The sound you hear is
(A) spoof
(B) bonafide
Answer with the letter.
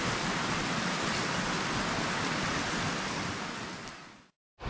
B